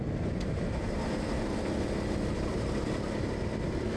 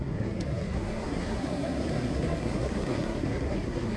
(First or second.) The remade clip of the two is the second